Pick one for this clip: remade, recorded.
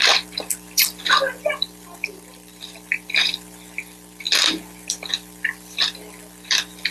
remade